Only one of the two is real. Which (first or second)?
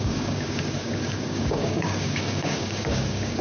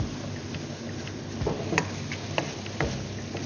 second